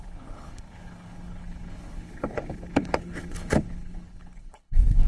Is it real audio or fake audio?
fake